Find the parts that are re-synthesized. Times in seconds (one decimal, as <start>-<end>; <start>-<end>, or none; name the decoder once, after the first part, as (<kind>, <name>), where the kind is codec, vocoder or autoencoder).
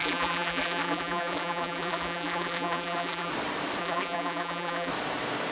0.0-3.3 (vocoder, BigVGAN v2); 3.8-4.9